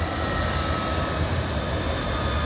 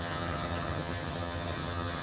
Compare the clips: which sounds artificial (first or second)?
second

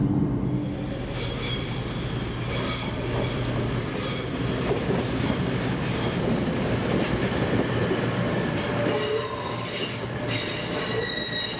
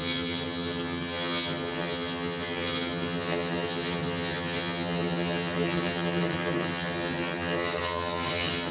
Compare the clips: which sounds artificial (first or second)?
second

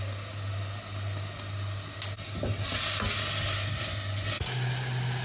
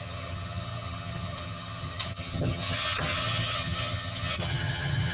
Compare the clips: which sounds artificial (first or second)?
second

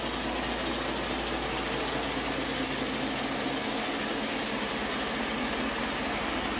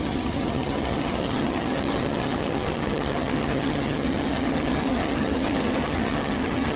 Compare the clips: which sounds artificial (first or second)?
second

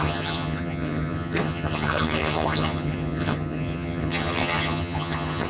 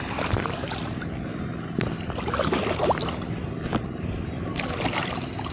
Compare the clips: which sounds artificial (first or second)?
first